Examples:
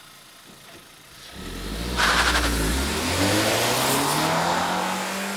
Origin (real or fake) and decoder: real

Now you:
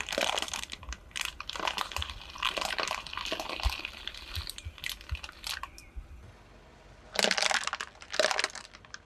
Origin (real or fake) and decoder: real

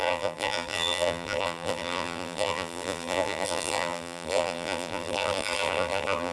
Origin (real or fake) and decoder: fake, vocoder, BigVGAN v2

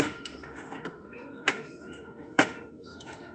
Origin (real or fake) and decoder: fake, autoencoder, DAC-VAE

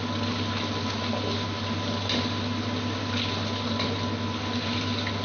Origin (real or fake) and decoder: real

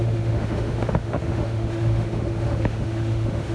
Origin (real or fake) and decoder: fake, autoencoder, DAC-VAE